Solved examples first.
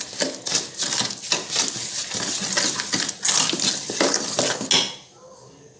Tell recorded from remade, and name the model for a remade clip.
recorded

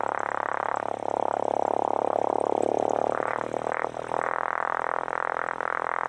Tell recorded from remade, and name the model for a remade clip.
recorded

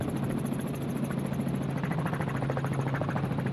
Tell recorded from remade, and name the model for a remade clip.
recorded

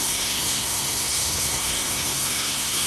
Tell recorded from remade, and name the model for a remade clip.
remade, codec, SNAC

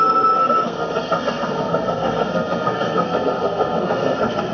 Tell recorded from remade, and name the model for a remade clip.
remade, codec, SNAC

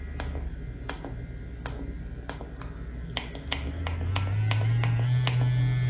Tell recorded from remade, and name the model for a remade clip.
recorded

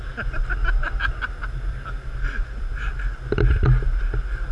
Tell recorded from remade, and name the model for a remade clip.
recorded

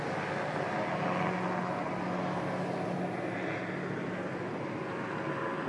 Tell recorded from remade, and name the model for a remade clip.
recorded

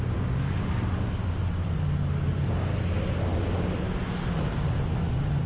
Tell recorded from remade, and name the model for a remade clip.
recorded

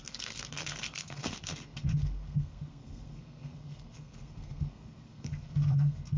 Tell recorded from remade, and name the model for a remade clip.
remade, codec, SNAC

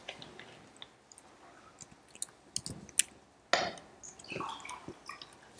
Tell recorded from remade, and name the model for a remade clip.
recorded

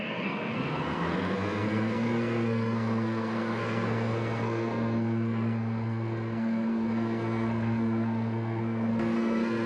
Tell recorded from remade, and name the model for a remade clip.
remade, codec, SNAC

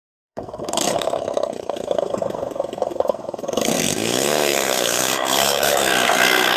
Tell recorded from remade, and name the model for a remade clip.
remade, codec, SNAC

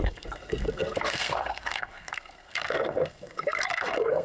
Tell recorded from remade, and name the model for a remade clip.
remade, codec, SNAC